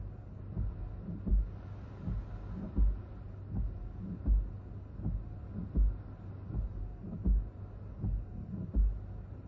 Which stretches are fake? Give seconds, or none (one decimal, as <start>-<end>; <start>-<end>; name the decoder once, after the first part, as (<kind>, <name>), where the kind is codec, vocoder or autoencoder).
none